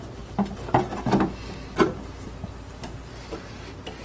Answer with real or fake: real